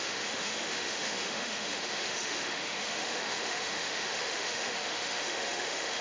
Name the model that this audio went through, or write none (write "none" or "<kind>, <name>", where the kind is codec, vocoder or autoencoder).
autoencoder, DAC-VAE